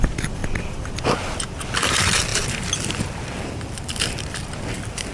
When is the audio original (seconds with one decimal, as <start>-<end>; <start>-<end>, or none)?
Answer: 0.4-1.6

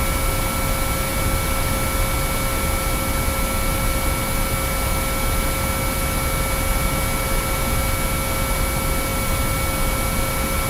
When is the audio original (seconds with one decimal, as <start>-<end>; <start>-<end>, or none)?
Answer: 0.0-10.7

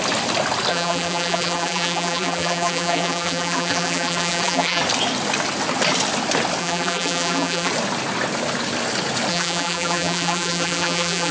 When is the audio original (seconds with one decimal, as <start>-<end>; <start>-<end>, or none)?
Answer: 0.0-0.7; 4.8-6.6; 7.7-9.3

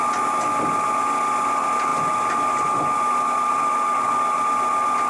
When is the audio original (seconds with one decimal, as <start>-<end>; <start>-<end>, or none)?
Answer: 0.0-5.1

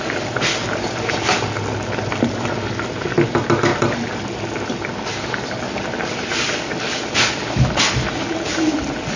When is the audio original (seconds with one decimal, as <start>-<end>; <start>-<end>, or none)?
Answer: 0.0-3.7